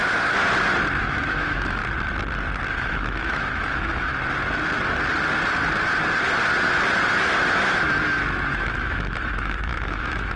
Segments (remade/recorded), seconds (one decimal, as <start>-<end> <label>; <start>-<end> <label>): 0.0-1.0 recorded; 1.0-1.8 remade; 1.8-2.7 recorded; 2.7-4.1 remade; 4.1-8.5 recorded; 8.5-10.4 remade